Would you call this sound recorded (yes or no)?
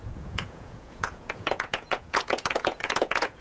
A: no